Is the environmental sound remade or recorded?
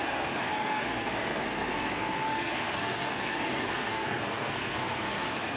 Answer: remade